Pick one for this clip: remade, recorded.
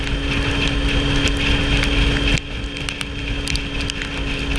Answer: recorded